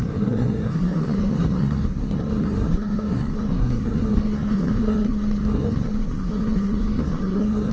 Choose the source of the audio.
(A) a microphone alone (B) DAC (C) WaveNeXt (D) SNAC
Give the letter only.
D